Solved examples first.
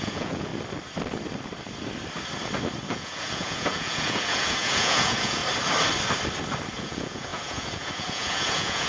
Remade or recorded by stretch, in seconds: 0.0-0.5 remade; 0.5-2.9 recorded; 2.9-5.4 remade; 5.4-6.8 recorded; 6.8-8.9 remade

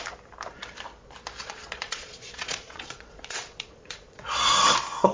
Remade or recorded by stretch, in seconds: 0.0-1.4 recorded; 1.4-4.5 remade; 4.5-5.1 recorded

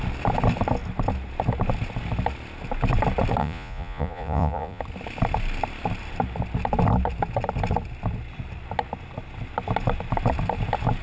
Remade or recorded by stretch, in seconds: 0.0-3.4 recorded; 3.4-4.8 remade; 4.8-11.0 recorded